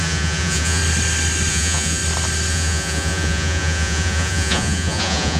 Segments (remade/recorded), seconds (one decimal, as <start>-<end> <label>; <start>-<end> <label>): 0.0-0.8 remade; 0.8-1.5 recorded; 1.5-2.0 remade; 2.0-2.5 recorded; 2.5-5.4 remade